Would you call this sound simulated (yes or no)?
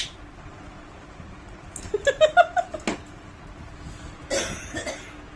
no